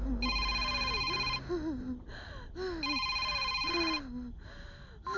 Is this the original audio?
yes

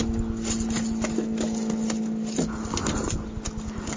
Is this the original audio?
yes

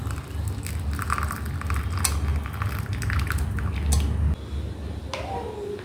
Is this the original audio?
yes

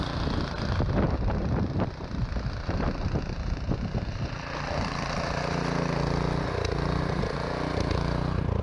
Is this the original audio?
yes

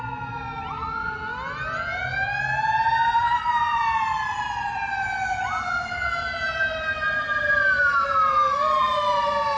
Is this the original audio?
no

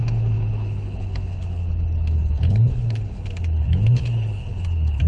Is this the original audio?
no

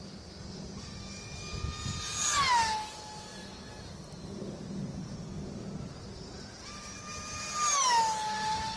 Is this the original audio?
yes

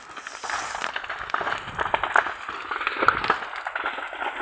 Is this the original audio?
yes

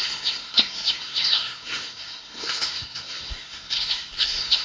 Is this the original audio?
no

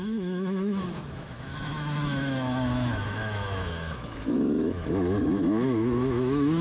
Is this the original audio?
no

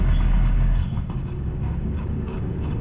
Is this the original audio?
no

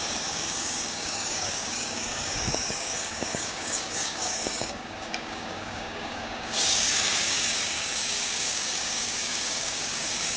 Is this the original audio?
no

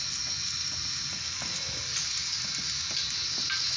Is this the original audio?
yes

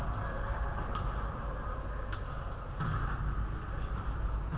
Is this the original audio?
yes